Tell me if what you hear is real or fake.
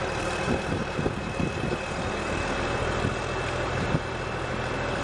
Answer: fake